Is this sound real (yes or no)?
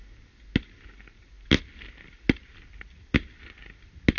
yes